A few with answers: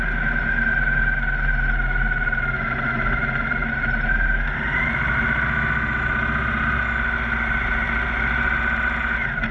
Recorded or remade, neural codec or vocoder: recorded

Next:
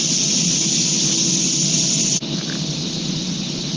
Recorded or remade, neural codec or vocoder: recorded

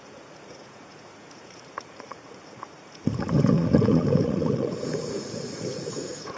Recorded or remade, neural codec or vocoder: remade, vocoder, Vocos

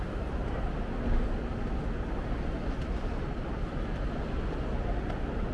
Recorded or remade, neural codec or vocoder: recorded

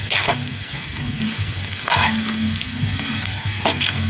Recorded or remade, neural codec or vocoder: remade, codec, SNAC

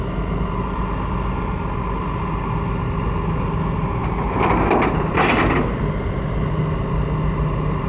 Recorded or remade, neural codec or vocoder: recorded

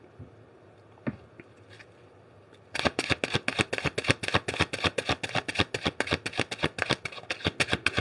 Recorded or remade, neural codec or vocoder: recorded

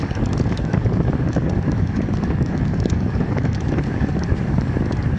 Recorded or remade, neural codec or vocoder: remade, codec, DAC